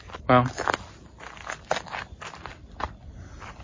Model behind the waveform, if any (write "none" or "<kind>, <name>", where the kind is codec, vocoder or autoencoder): none